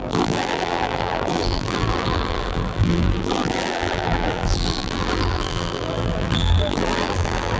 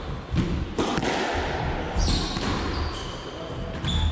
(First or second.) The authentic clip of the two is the second